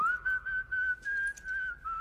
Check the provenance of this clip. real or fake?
real